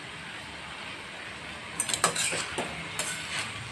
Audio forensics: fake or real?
real